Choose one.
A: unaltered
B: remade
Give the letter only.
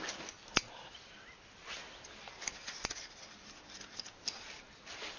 A